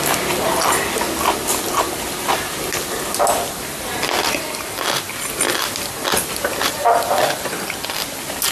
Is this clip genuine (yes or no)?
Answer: yes